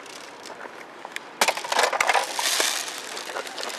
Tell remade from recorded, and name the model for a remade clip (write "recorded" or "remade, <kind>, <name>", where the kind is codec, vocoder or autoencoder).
recorded